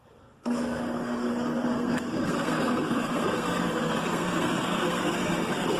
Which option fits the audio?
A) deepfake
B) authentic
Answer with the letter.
A